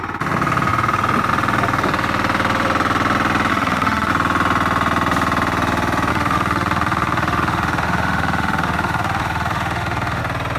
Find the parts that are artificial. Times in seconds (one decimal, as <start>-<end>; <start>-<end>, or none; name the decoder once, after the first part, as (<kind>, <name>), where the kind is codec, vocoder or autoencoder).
3.5-4.1 (autoencoder, DAC-VAE); 6.1-10.2